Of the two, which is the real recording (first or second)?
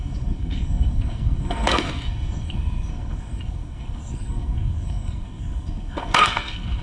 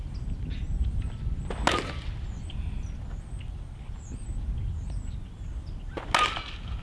second